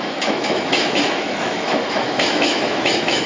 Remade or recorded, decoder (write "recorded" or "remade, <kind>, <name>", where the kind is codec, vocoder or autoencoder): remade, autoencoder, DAC-VAE